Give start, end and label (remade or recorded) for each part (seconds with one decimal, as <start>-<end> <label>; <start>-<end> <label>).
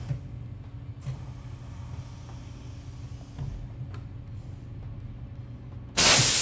0.0-6.4 recorded